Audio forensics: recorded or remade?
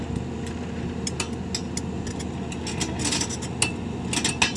recorded